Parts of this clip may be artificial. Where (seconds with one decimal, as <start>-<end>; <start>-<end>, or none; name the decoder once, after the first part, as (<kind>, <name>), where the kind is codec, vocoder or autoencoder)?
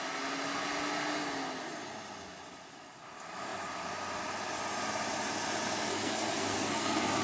5.9-7.2 (codec, SNAC)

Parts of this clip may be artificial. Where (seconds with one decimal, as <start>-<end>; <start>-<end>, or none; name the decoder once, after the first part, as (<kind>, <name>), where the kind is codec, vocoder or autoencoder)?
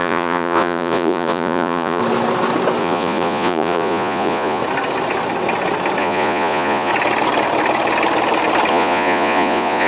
0.0-2.0 (vocoder, Vocos); 2.8-4.6; 6.0-6.9; 8.7-9.9